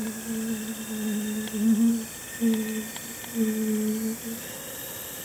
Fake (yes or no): no